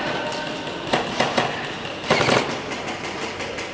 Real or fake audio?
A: real